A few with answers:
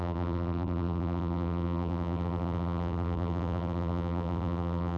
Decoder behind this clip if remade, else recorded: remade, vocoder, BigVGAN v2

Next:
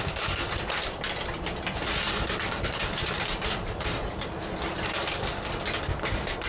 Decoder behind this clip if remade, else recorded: recorded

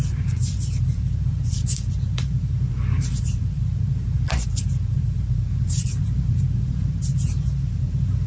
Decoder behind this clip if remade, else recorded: remade, vocoder, BigVGAN v2